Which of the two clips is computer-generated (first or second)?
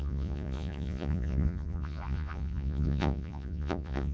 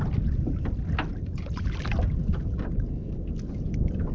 first